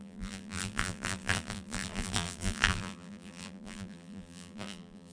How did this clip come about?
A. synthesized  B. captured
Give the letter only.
A